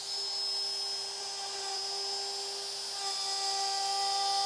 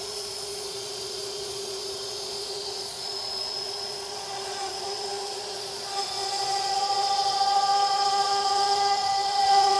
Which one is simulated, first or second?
second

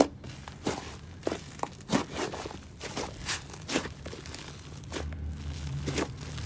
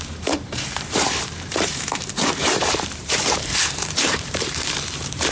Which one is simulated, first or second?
second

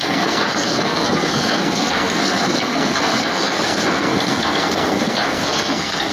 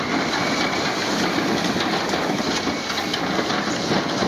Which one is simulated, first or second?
first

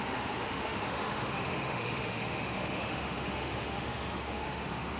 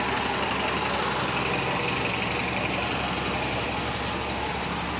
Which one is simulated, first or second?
first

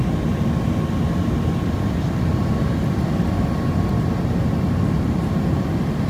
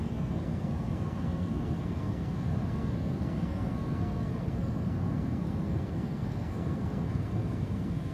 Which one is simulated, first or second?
second